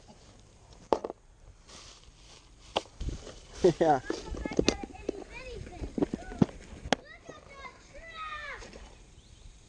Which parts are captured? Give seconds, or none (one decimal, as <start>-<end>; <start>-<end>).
1.0-5.4; 6.4-7.2